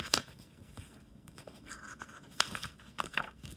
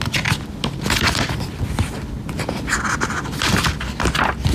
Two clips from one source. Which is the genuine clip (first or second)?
second